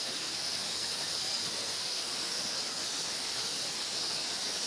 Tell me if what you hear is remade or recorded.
remade